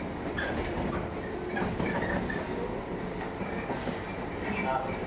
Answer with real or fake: real